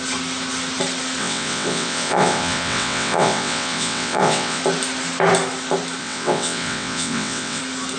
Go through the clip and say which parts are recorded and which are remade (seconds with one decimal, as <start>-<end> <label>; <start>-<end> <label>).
0.0-1.2 recorded; 1.2-4.6 remade; 4.6-6.0 recorded; 6.0-7.6 remade; 7.6-8.0 recorded